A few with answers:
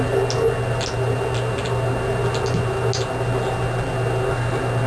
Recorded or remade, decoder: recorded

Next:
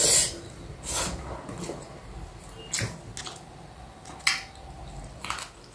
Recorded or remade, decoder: recorded